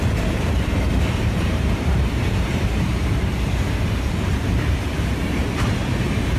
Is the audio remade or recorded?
remade